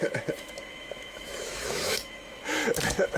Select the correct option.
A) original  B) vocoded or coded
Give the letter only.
B